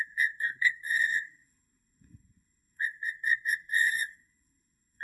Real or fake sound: fake